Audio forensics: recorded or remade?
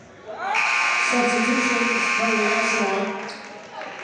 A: recorded